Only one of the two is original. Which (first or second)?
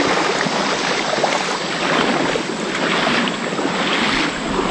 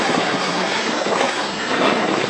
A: first